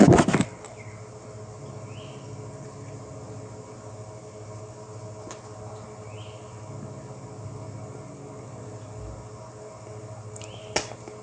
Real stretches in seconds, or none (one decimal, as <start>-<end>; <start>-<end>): 0.0-11.2